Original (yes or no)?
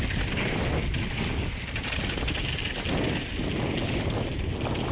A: yes